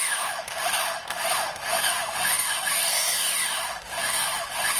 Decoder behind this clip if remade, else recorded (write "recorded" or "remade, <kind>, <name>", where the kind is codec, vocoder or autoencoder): remade, autoencoder, DAC-VAE